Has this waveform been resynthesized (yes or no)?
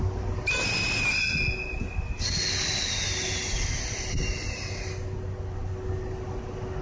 no